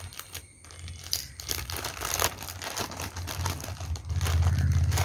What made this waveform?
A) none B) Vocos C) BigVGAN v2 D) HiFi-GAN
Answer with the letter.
A